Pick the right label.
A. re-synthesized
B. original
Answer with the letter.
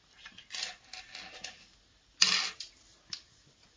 B